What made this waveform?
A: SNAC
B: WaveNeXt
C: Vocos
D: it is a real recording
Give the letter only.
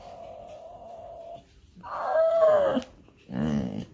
D